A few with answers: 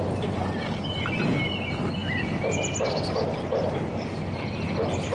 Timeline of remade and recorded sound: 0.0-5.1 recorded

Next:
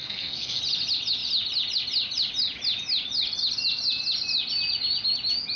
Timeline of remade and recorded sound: 0.0-0.6 remade; 0.6-5.6 recorded

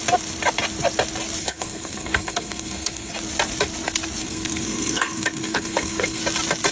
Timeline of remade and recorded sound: 0.0-1.4 recorded; 1.4-3.1 remade; 3.1-4.2 recorded; 4.2-6.2 remade; 6.2-6.7 recorded

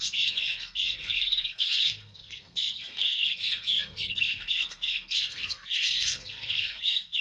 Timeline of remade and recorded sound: 0.0-7.2 remade

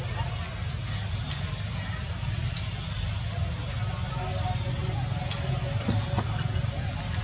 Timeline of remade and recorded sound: 0.0-7.2 recorded

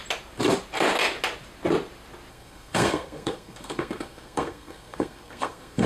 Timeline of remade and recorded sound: 0.0-2.3 recorded; 2.3-5.9 remade

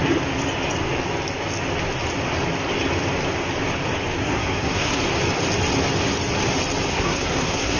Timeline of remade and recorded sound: 0.0-4.2 recorded; 4.2-5.0 remade; 5.0-6.9 recorded; 6.9-7.8 remade

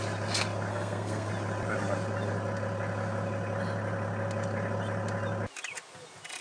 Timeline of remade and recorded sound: 0.0-0.7 recorded; 0.7-1.3 remade; 1.3-6.4 recorded